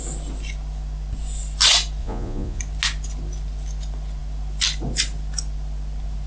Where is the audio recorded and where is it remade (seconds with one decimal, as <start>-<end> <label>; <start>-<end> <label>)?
0.0-2.0 recorded; 2.0-2.6 remade; 2.6-6.3 recorded